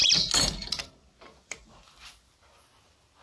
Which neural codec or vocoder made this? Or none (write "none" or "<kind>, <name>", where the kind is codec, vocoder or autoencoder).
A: none